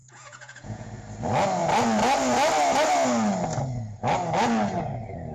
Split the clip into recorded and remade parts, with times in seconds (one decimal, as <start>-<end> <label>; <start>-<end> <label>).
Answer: 0.0-0.9 remade; 0.9-5.3 recorded